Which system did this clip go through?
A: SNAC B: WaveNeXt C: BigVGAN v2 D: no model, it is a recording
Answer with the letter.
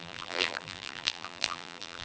C